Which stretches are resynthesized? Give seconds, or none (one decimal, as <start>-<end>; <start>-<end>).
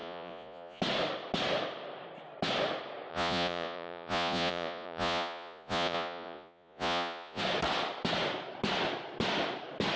0.0-0.8; 3.1-7.4